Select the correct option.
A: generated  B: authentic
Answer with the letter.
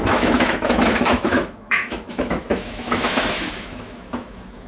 A